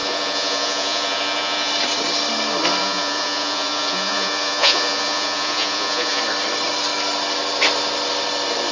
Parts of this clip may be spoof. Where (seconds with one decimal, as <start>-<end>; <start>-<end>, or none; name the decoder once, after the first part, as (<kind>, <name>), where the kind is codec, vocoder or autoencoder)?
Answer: 0.0-1.7 (vocoder, Vocos); 2.8-6.2